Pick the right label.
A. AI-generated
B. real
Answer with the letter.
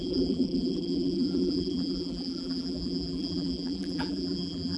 A